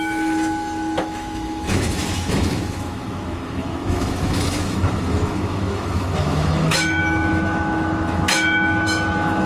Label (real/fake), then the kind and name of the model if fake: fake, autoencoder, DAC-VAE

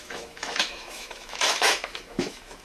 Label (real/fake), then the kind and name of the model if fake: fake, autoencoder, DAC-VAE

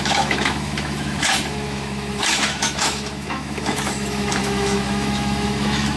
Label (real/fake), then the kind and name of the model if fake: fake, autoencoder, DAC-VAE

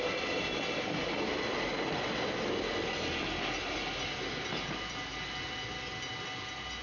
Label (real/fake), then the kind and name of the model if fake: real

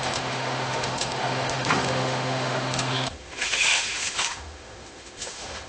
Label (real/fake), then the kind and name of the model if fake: fake, autoencoder, DAC-VAE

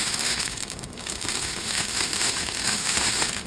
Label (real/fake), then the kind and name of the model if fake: fake, autoencoder, DAC-VAE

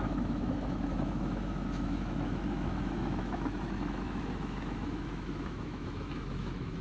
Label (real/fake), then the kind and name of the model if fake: fake, autoencoder, DAC-VAE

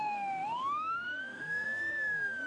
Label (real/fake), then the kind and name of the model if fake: fake, autoencoder, DAC-VAE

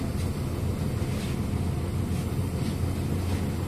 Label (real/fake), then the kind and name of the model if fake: real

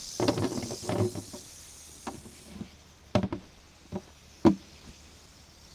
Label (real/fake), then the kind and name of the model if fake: real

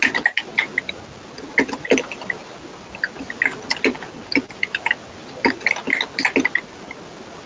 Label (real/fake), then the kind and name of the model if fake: real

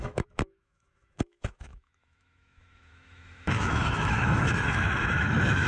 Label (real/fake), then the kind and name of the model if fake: fake, autoencoder, DAC-VAE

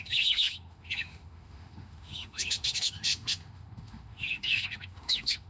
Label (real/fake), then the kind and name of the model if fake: fake, autoencoder, DAC-VAE